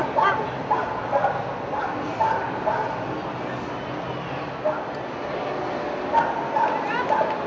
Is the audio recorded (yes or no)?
yes